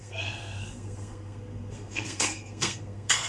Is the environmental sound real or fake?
fake